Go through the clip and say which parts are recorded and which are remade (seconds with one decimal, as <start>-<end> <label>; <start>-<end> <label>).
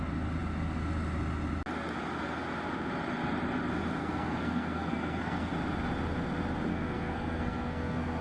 0.0-4.0 recorded; 4.0-5.5 remade; 5.5-6.7 recorded; 6.7-8.2 remade